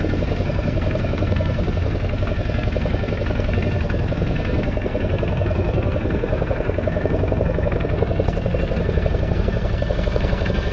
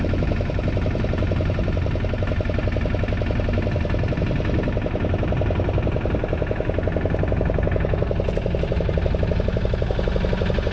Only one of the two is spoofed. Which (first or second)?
first